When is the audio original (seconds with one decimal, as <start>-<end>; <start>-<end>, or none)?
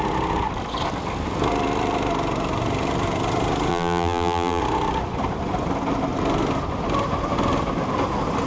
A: 0.0-3.7; 4.6-8.5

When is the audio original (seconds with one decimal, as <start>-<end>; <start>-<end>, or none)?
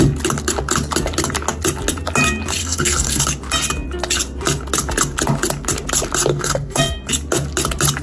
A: 0.0-2.6; 3.2-6.3; 7.1-8.0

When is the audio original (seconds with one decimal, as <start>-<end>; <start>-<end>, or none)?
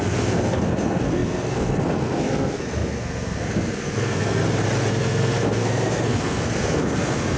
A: 4.4-4.9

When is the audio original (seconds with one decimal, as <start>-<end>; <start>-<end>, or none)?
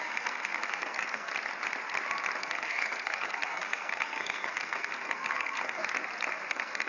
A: 1.3-2.4; 5.8-6.5